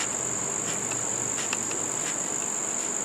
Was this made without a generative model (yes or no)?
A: yes